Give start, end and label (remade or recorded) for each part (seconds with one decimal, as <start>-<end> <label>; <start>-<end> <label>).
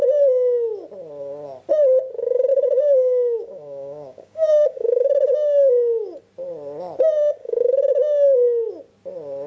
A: 0.0-2.5 recorded; 2.5-6.2 remade; 6.2-7.4 recorded; 7.4-8.7 remade; 8.7-9.5 recorded